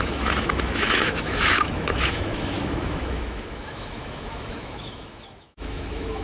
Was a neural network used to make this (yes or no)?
yes